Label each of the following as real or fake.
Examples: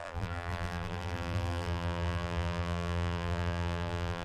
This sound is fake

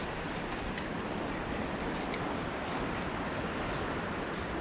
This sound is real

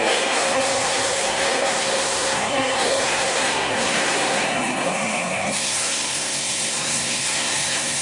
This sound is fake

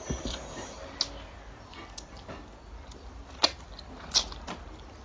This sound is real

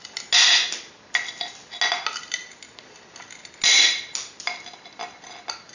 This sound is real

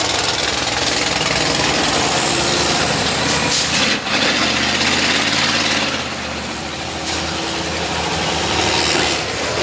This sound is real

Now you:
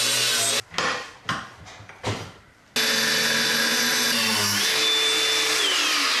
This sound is real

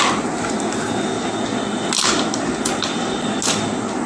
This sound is real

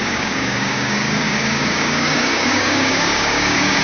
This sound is fake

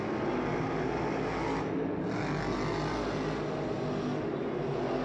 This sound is real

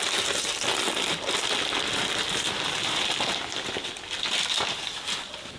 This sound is fake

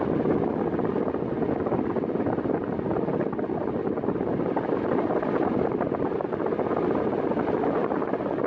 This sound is real